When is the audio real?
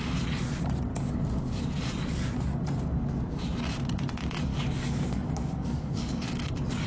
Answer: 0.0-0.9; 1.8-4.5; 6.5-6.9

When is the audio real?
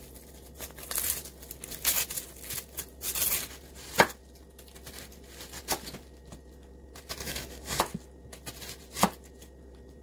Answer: 0.0-7.2; 7.8-10.0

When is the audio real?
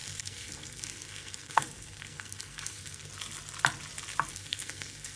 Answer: 3.1-4.3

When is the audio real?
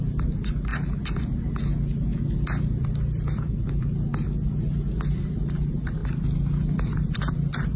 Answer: 0.7-2.7; 4.1-5.0; 6.0-6.6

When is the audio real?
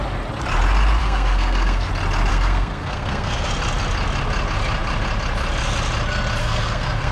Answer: 0.0-1.0; 1.9-2.3; 3.5-6.4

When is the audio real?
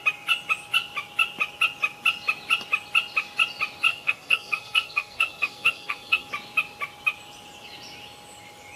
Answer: 0.0-3.9; 6.3-8.8